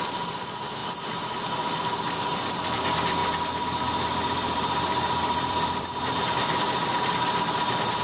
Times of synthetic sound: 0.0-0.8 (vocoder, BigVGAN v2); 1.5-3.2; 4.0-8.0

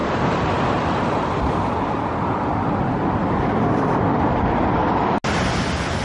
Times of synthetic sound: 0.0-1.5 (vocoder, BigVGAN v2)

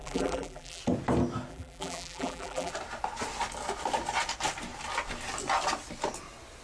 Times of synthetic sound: 0.0-0.8 (vocoder, BigVGAN v2); 1.5-2.7

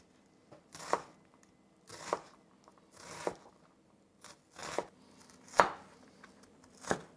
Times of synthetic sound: none